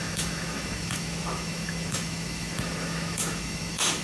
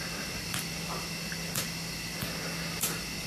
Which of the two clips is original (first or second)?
second